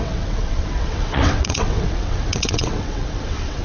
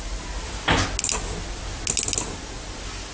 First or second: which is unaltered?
second